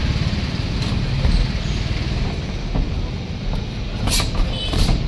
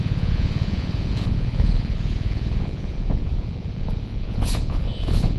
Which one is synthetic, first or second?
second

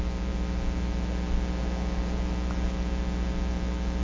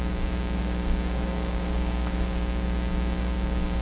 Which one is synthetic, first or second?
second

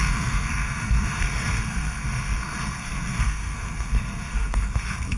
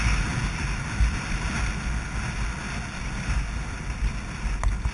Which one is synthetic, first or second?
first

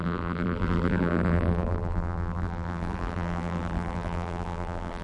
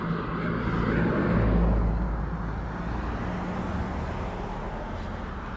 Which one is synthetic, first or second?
first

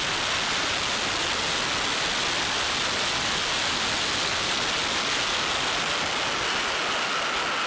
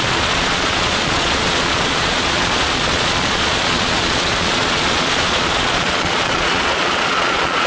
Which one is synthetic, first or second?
second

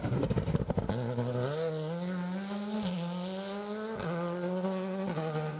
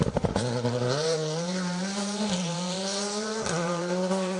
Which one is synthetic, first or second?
second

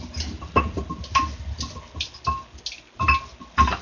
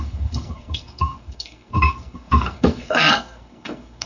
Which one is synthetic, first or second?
second